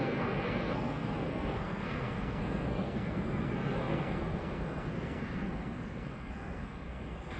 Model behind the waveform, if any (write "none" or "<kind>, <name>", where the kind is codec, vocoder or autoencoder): codec, SNAC